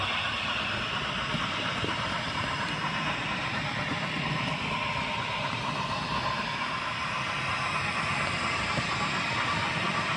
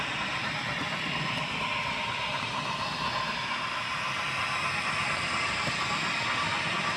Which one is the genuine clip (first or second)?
second